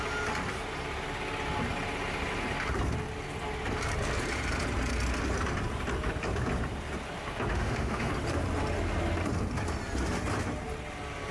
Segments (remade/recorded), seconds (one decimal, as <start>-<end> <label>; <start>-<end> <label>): 0.0-7.5 recorded; 7.5-8.1 remade; 8.1-11.3 recorded